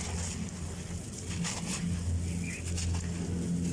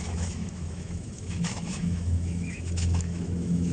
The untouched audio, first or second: first